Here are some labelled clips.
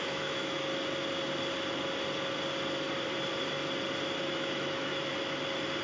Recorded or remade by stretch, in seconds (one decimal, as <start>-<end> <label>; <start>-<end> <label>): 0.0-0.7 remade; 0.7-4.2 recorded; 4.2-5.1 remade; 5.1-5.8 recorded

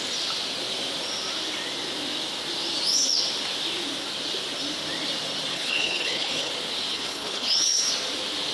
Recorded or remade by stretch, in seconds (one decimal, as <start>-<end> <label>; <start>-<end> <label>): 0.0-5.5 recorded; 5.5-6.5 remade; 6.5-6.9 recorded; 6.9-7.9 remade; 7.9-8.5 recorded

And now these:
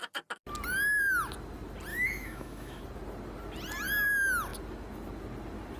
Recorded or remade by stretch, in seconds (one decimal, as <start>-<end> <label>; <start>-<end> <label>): 0.0-1.9 recorded; 1.9-2.8 remade; 2.8-5.8 recorded

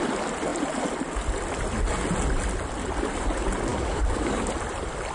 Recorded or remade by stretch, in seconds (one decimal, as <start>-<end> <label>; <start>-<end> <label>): 0.0-3.7 recorded; 3.7-4.5 remade; 4.5-5.1 recorded

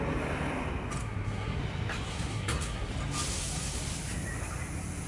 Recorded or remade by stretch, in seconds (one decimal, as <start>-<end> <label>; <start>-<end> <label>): 0.0-1.0 recorded; 1.0-1.6 remade; 1.6-2.1 recorded; 2.1-2.9 remade; 2.9-3.3 recorded; 3.3-3.8 remade; 3.8-5.1 recorded